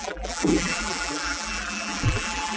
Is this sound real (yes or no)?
no